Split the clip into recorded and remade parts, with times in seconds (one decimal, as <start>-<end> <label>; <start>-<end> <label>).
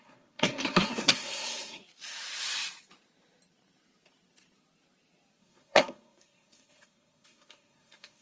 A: 0.0-1.8 remade; 1.8-5.4 recorded; 5.4-8.2 remade